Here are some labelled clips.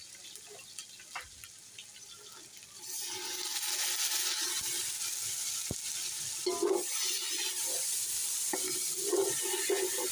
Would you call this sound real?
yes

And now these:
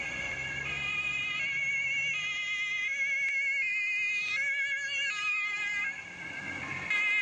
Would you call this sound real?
no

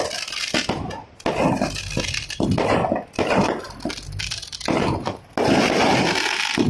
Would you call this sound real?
yes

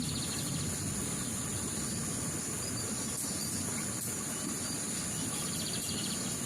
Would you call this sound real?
yes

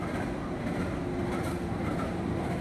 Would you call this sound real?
yes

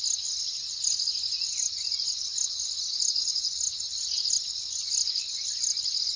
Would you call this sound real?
yes